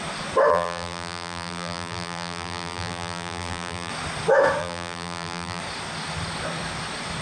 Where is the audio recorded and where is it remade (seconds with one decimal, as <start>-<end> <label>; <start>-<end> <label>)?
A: 0.0-0.5 recorded; 0.5-3.9 remade; 3.9-4.6 recorded; 4.6-5.6 remade; 5.6-7.2 recorded